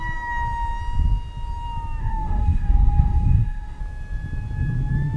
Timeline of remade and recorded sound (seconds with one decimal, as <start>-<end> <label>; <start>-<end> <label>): 0.0-2.0 recorded; 2.0-3.8 remade; 3.8-5.2 recorded